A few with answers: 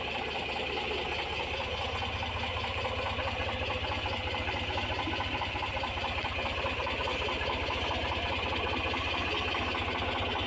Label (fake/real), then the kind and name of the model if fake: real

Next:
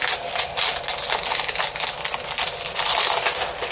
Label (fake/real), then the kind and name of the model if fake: real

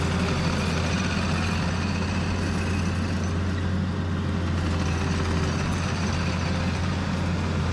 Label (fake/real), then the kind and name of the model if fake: real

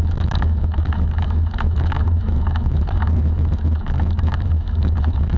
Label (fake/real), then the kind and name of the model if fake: fake, autoencoder, DAC-VAE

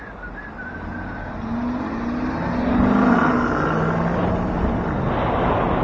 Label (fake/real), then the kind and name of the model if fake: real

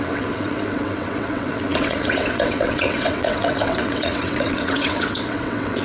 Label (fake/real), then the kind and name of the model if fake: fake, vocoder, WaveNeXt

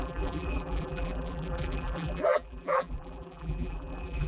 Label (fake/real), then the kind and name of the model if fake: fake, vocoder, BigVGAN v2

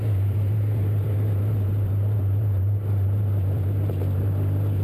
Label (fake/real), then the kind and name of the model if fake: fake, vocoder, BigVGAN v2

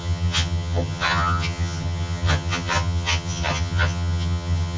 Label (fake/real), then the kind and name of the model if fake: fake, vocoder, HiFi-GAN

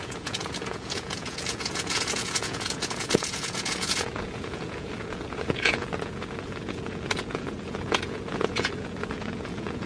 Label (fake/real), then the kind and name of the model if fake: fake, vocoder, Vocos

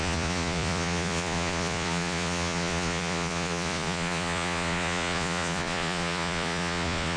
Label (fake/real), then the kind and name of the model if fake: fake, vocoder, Vocos